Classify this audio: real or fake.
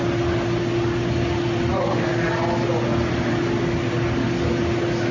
real